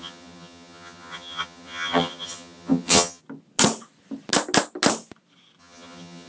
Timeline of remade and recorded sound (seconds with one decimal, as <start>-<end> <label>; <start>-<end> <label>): 0.0-3.2 remade; 3.2-5.6 recorded; 5.6-6.3 remade